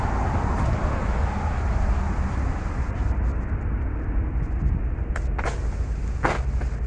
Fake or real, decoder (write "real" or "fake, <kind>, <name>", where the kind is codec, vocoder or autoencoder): real